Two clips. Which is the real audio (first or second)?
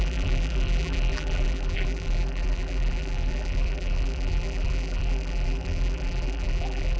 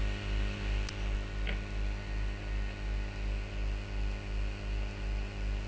second